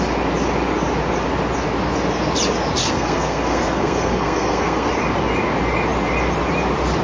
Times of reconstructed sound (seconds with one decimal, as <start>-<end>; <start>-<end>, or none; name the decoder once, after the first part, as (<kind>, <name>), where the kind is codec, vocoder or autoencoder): 2.8-4.9 (codec, SNAC)

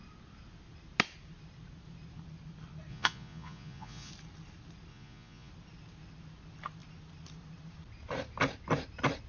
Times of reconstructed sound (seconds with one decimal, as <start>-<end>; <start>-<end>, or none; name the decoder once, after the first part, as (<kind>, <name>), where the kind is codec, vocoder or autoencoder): 2.9-4.1 (vocoder, Vocos); 4.9-5.5